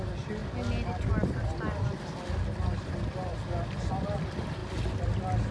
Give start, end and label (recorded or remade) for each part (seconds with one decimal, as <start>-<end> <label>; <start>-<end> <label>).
0.0-5.5 recorded